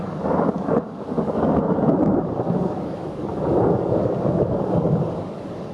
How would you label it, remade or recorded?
remade